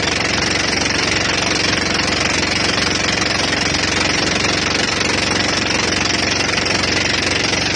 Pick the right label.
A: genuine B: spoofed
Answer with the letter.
A